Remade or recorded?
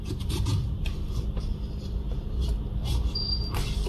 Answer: remade